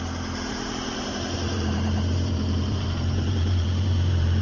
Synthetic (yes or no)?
yes